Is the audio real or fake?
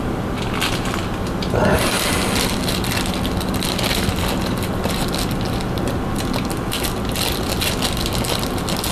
real